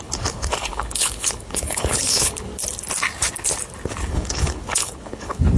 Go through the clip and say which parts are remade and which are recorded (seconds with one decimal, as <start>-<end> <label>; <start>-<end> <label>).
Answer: 0.0-2.5 remade; 2.5-4.1 recorded; 4.1-5.6 remade